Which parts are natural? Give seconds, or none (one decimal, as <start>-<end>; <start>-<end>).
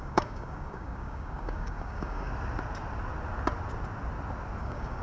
2.3-4.6